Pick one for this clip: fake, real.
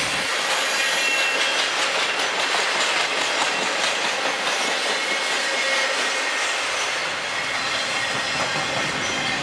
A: real